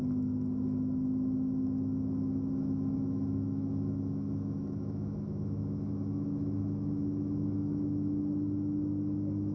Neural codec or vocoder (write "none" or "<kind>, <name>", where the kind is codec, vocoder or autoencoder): autoencoder, DAC-VAE